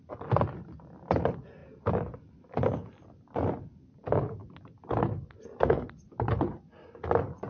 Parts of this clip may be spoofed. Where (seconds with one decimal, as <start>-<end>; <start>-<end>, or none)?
none